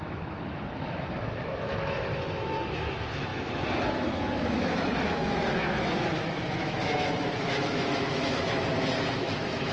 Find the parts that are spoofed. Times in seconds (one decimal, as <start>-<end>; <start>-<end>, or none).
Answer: 0.0-9.7